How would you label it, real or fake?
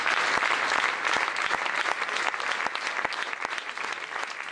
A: real